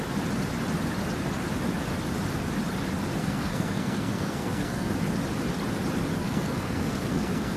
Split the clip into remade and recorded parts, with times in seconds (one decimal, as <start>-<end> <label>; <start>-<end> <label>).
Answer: 0.0-3.2 recorded; 3.2-4.9 remade; 4.9-6.2 recorded; 6.2-7.6 remade